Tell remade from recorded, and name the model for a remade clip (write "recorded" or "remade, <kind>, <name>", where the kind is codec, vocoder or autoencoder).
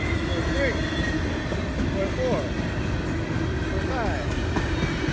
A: recorded